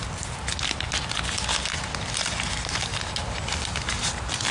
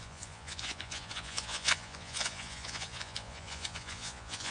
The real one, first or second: first